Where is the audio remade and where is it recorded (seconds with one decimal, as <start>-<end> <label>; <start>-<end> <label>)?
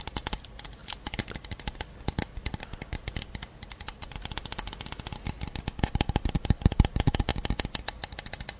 0.0-8.6 recorded